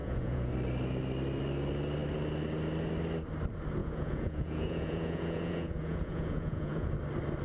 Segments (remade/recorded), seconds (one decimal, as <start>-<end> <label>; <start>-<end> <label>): 0.0-0.5 remade; 0.5-3.8 recorded; 3.8-6.9 remade; 6.9-7.4 recorded